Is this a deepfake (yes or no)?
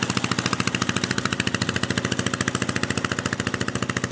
no